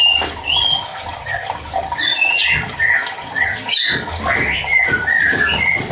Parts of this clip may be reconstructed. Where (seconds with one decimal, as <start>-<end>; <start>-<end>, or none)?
4.6-5.9